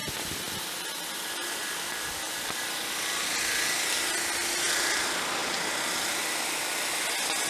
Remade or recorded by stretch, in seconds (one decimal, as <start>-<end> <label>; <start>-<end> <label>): 0.0-7.5 recorded